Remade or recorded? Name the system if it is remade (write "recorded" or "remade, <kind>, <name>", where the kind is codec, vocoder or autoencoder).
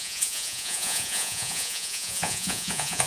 remade, vocoder, Vocos